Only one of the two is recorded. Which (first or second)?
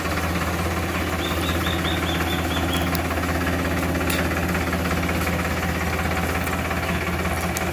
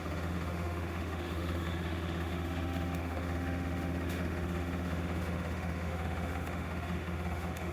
first